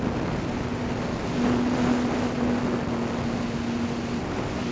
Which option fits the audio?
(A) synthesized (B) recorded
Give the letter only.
B